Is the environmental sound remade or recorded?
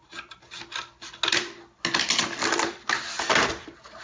recorded